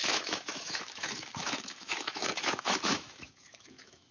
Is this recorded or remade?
remade